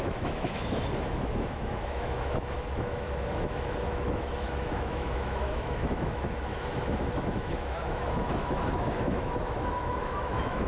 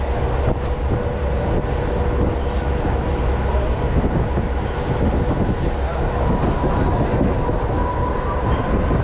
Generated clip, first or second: first